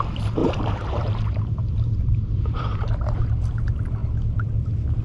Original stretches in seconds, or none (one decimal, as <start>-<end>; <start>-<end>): 0.0-0.4; 3.2-5.0